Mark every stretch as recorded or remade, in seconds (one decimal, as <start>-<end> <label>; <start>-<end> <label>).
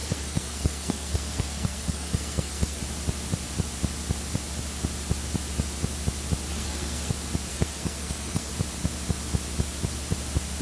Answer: 0.0-2.8 remade; 2.8-6.5 recorded; 6.5-7.1 remade; 7.1-7.5 recorded; 7.5-8.5 remade; 8.5-10.6 recorded